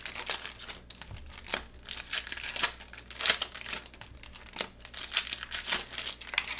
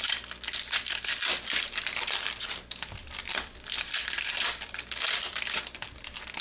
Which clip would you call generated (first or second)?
second